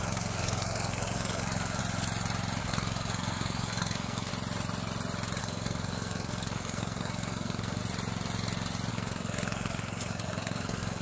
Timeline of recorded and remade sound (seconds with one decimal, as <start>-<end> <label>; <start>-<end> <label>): 0.0-1.8 remade; 1.8-2.6 recorded; 2.6-4.3 remade; 4.3-5.4 recorded; 5.4-7.8 remade; 7.8-8.9 recorded; 8.9-11.0 remade